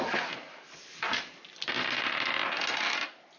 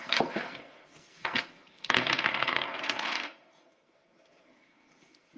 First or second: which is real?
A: first